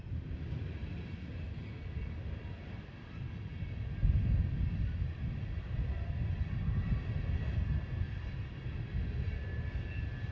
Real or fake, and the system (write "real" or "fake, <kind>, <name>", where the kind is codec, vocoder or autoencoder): real